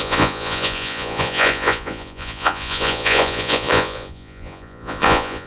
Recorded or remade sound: remade